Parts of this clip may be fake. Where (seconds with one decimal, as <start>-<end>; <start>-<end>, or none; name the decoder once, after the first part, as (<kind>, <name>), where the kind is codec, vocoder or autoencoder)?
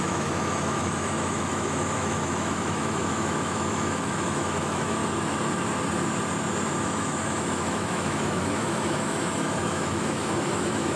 0.0-5.0 (autoencoder, DAC-VAE); 6.8-11.0